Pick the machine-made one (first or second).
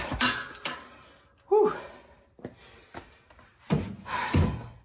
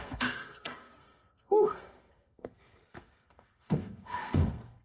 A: second